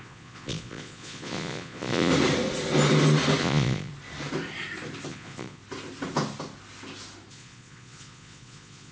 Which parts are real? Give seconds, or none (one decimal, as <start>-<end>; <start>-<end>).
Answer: 2.1-3.4; 3.9-5.1; 5.6-7.3